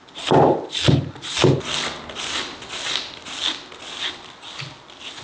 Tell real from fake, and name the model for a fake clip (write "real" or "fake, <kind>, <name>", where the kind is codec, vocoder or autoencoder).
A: real